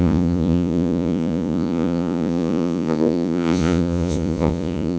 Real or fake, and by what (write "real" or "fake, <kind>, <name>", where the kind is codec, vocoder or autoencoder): fake, vocoder, Vocos